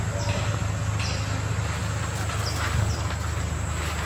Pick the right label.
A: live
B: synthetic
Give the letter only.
A